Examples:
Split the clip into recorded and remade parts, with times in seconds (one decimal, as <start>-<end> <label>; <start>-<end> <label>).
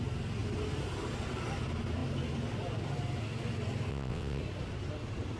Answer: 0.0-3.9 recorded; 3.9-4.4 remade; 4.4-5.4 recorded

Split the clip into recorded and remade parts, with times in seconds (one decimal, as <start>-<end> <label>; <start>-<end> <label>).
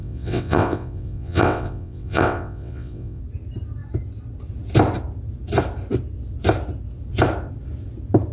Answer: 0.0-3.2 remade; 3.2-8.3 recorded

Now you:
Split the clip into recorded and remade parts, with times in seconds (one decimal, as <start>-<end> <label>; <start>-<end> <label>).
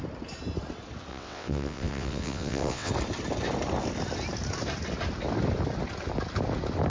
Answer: 0.0-1.1 recorded; 1.1-2.9 remade; 2.9-6.9 recorded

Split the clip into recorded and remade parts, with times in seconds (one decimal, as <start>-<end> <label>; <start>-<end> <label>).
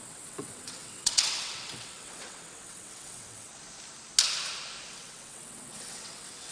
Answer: 0.0-3.5 remade; 3.5-4.9 recorded; 4.9-6.5 remade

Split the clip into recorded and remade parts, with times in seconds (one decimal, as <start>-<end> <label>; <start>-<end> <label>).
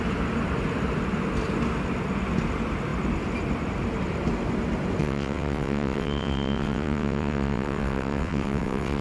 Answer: 0.0-5.0 recorded; 5.0-9.0 remade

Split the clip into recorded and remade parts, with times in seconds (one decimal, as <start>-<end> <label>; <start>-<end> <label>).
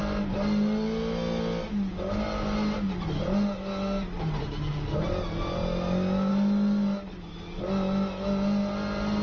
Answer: 0.0-9.2 recorded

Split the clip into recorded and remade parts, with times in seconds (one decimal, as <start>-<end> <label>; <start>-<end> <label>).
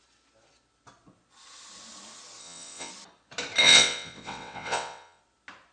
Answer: 0.0-2.4 recorded; 2.4-2.9 remade; 2.9-3.6 recorded; 3.6-5.2 remade; 5.2-5.7 recorded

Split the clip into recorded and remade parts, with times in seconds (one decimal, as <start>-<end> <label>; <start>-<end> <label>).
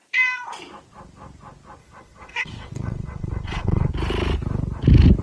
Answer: 0.0-1.8 recorded; 1.8-3.9 remade; 3.9-5.2 recorded